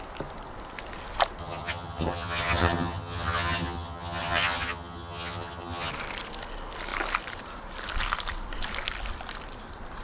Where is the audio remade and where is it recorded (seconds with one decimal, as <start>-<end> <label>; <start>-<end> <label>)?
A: 0.0-1.4 recorded; 1.4-5.9 remade; 5.9-10.0 recorded